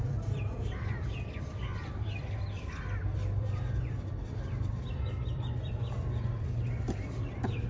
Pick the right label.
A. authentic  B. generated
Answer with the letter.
B